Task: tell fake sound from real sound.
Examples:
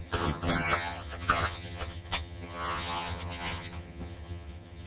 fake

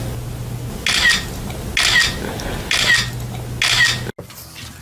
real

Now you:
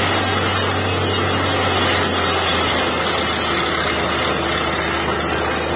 real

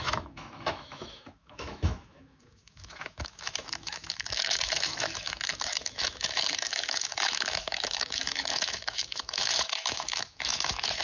fake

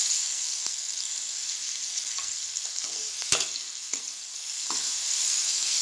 fake